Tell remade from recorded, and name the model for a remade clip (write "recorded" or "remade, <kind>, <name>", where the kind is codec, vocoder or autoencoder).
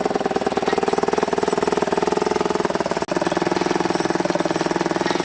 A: recorded